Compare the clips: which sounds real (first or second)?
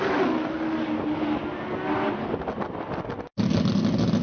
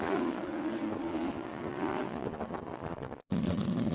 first